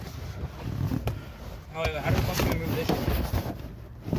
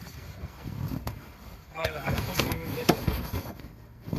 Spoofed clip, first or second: second